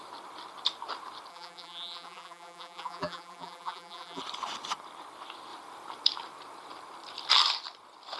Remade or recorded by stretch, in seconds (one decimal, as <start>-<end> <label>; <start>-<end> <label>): 0.0-1.3 recorded; 1.3-4.2 remade; 4.2-8.2 recorded